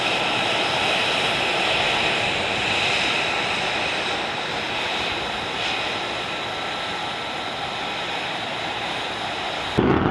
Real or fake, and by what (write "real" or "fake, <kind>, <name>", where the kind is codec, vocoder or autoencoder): real